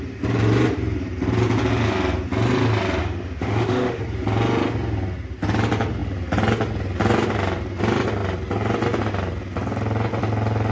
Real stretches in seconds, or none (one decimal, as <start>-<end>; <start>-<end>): 0.0-3.0; 4.0-10.7